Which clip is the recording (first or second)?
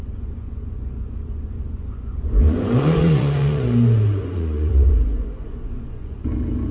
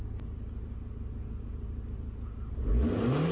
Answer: second